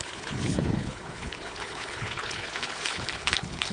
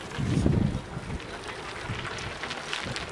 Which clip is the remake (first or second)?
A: first